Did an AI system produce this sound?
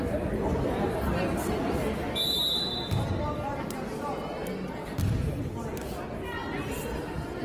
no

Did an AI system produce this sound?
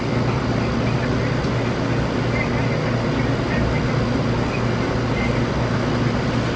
no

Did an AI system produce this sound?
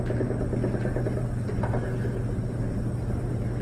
no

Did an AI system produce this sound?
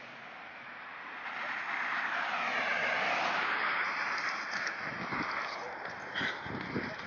no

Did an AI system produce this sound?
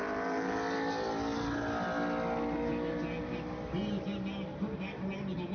no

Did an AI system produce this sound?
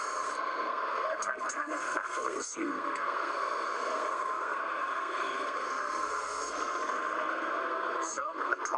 yes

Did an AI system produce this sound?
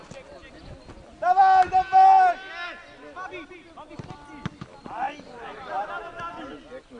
no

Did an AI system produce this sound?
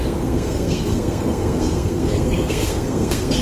yes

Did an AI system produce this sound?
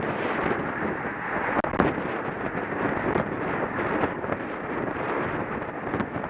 no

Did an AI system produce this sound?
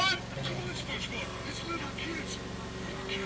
no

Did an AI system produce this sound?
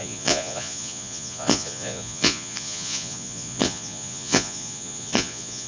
yes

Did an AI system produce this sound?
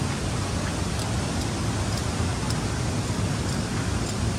no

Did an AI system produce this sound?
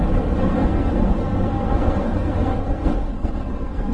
yes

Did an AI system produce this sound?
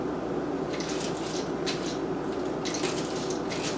no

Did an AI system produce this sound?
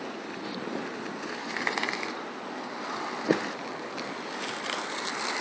no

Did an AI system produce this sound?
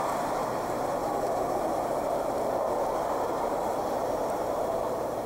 yes